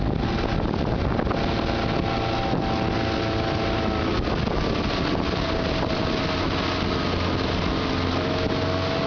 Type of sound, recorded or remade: recorded